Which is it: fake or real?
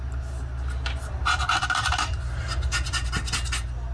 real